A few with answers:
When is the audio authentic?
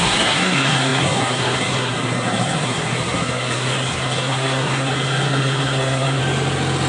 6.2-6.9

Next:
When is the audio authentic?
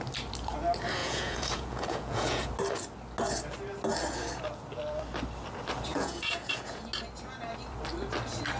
0.0-1.0; 2.5-5.9; 6.8-8.6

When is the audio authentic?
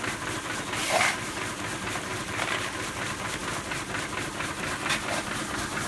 0.0-5.9